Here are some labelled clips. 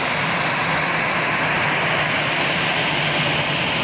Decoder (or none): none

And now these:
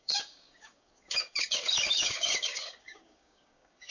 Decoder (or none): codec, DAC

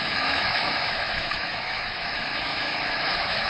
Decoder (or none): autoencoder, DAC-VAE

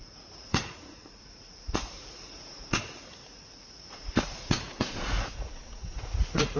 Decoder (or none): vocoder, Vocos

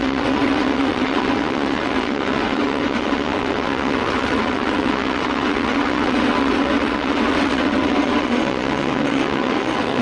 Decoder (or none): vocoder, WaveNeXt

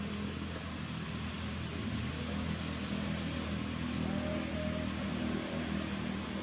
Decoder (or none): none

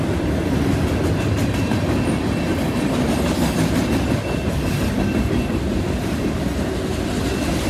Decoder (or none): none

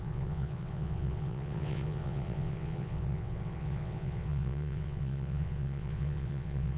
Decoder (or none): vocoder, WaveNeXt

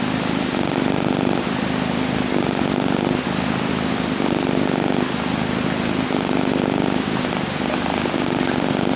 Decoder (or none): none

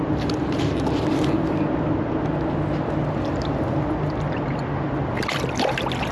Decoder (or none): none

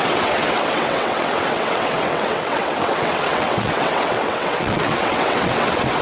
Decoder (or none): vocoder, WaveNeXt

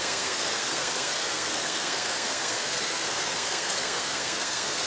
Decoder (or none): codec, SNAC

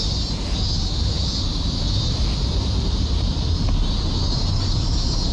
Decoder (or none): none